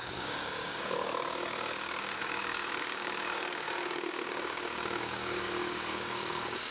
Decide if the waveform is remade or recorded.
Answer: remade